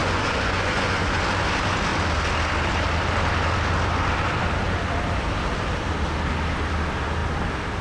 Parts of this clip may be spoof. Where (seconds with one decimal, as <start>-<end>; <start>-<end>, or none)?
0.0-1.2

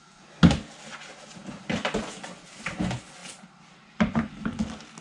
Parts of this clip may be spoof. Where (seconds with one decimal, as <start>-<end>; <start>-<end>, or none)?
3.2-4.3

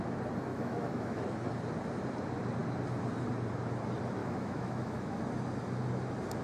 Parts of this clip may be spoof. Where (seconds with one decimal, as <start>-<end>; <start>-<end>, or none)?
0.5-1.2; 4.2-5.2

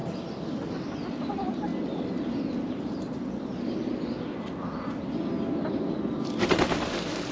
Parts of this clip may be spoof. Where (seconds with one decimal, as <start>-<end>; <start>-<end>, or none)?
none

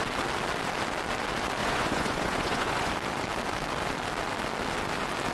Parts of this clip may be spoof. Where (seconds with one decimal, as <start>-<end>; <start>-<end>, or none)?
1.6-2.9

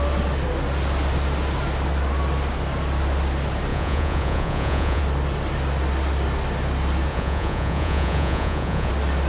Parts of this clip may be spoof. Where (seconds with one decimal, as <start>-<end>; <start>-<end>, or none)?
3.7-5.0; 7.1-8.9

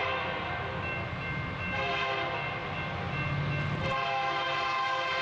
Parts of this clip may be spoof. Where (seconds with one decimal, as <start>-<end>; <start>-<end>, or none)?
none